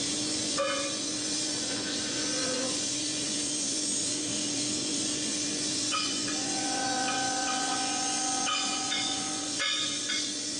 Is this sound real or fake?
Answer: fake